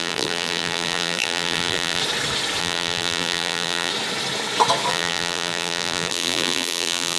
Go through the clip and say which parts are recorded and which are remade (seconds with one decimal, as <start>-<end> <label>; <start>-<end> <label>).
0.0-2.0 remade; 2.0-2.6 recorded; 2.6-3.9 remade; 3.9-4.9 recorded; 4.9-7.2 remade